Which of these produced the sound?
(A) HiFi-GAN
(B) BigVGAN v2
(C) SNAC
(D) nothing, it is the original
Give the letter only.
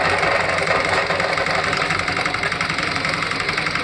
D